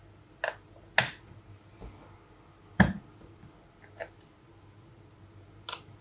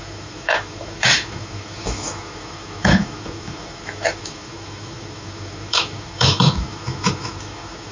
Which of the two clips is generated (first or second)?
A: second